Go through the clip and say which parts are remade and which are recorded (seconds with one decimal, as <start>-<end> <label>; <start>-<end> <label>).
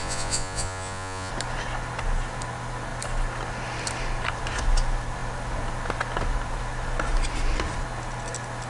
0.0-1.3 remade; 1.3-8.7 recorded